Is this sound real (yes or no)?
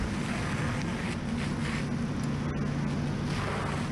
yes